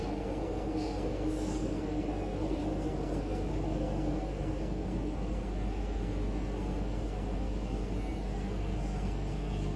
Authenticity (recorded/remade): remade